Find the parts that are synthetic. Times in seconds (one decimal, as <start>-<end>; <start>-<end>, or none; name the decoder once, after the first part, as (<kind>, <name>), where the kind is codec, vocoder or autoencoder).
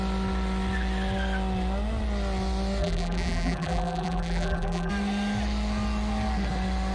2.8-4.9 (vocoder, BigVGAN v2)